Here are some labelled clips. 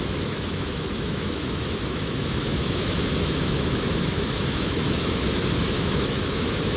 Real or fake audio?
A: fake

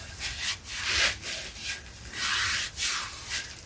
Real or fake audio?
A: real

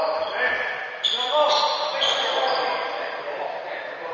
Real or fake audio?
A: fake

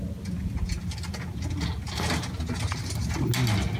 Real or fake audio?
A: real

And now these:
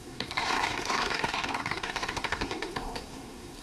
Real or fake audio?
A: fake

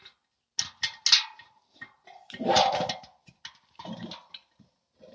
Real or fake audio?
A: real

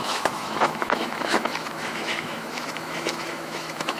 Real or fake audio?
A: fake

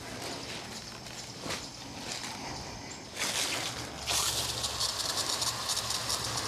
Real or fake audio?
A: real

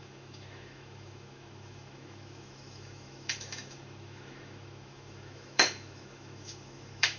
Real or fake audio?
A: fake